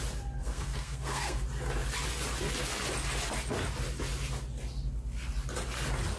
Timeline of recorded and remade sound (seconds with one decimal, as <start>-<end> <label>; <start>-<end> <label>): 0.0-0.4 recorded; 0.4-1.4 remade; 1.4-6.2 recorded